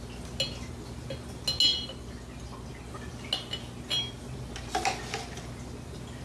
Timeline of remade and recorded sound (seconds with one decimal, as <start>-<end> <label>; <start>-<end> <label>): 0.0-6.2 recorded